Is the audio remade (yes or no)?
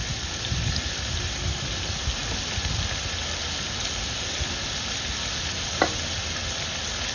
no